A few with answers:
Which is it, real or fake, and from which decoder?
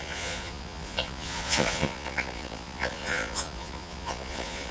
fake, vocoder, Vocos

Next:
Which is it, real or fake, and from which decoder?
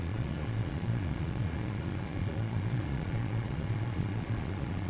fake, vocoder, Vocos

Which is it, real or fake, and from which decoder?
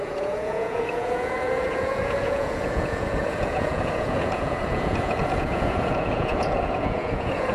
fake, vocoder, Vocos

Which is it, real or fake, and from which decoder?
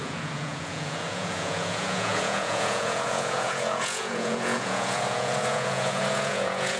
fake, vocoder, Vocos